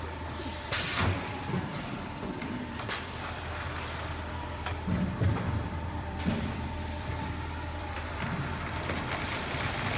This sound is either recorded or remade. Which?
remade